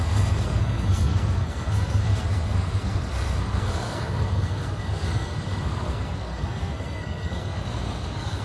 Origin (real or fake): fake